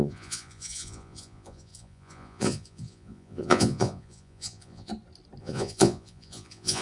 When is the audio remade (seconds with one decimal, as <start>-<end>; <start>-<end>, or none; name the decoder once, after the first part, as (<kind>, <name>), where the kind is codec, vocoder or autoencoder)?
0.0-4.9 (vocoder, Vocos); 5.4-6.8